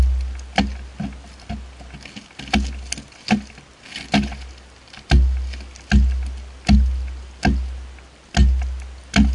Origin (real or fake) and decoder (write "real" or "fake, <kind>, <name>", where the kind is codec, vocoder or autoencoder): real